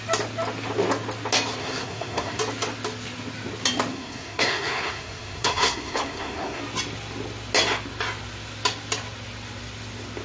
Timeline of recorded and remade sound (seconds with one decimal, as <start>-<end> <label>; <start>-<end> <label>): 0.0-1.6 recorded; 1.6-2.4 remade; 2.4-3.9 recorded; 3.9-6.6 remade; 6.6-10.2 recorded